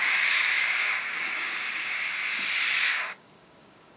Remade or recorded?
remade